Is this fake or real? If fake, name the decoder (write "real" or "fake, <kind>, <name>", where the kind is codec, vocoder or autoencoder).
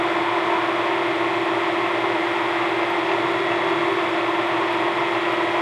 real